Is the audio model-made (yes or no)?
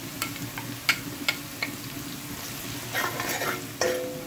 no